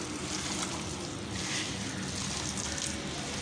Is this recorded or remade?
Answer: recorded